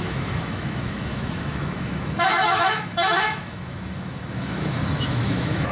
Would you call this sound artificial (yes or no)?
yes